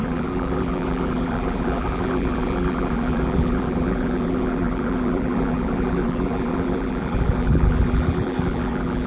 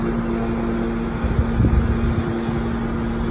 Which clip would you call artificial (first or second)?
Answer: first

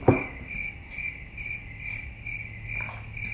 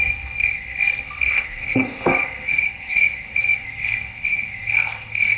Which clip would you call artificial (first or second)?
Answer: second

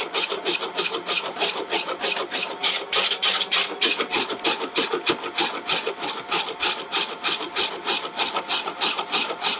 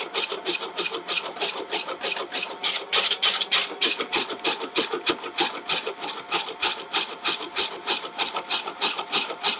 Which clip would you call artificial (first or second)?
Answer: second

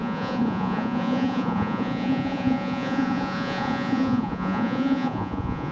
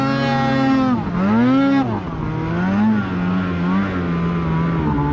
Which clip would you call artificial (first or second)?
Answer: first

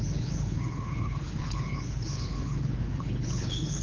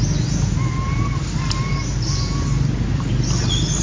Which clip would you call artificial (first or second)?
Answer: first